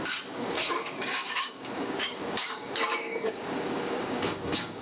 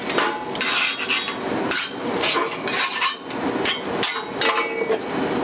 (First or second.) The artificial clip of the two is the first